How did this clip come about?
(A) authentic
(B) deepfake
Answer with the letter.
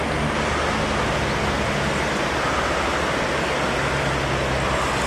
A